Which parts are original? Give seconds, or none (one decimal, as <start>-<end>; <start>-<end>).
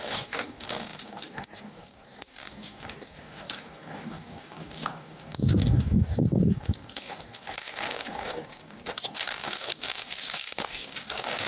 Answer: none